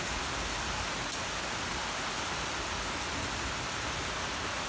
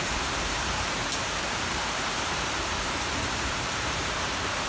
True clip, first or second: first